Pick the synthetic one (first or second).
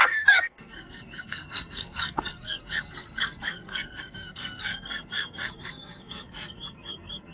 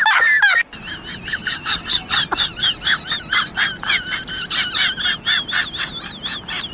first